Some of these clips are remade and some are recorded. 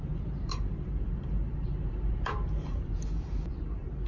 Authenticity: remade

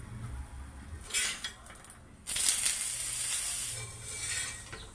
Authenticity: recorded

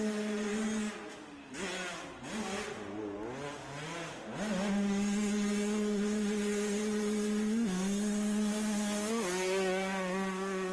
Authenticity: recorded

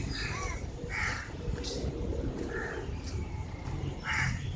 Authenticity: remade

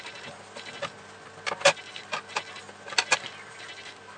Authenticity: recorded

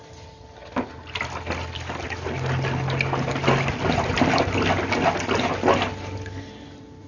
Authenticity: recorded